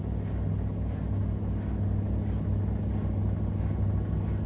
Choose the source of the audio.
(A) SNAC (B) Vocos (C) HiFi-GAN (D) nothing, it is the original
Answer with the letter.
D